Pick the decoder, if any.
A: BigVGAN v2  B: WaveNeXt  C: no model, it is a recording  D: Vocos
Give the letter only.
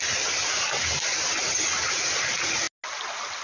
C